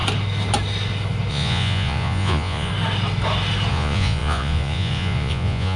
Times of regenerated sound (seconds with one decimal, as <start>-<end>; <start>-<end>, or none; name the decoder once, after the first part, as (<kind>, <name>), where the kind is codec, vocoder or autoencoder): 1.3-2.7 (vocoder, Vocos); 3.7-5.8